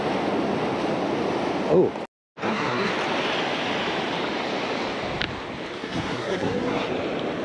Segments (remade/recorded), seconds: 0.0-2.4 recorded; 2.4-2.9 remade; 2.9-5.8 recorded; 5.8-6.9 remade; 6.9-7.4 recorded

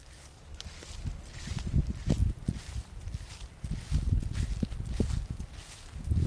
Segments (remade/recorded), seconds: 0.0-6.3 recorded

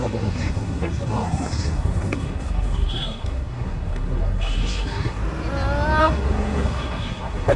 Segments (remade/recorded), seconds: 0.0-5.2 remade; 5.2-6.0 recorded; 6.0-7.6 remade

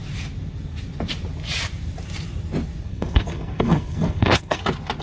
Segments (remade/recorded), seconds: 0.0-2.9 recorded; 2.9-4.6 remade; 4.6-5.0 recorded

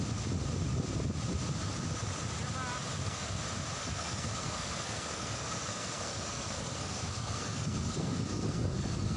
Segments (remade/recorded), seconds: 0.0-2.9 recorded; 2.9-3.4 remade; 3.4-3.8 recorded; 3.8-9.2 remade

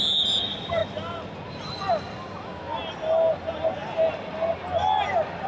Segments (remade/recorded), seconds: 0.0-5.5 recorded